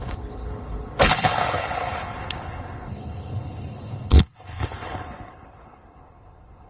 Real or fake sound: fake